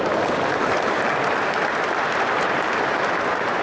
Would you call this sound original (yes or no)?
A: yes